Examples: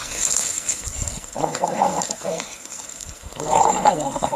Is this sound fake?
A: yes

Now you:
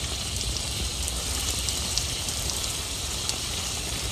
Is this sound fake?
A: yes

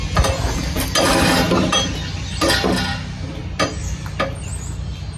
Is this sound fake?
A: no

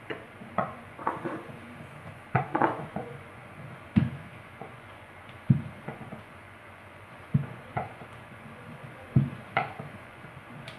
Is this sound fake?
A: yes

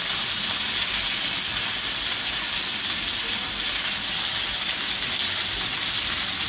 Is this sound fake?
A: no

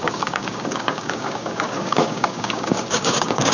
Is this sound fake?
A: yes